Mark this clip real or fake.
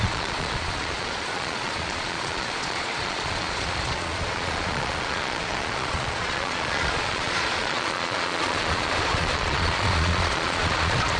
fake